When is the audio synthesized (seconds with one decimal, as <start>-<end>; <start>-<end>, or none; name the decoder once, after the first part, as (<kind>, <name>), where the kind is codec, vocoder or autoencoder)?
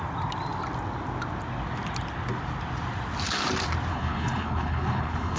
3.9-5.4 (codec, HILCodec)